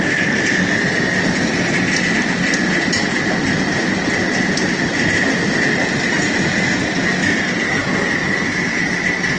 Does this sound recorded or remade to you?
recorded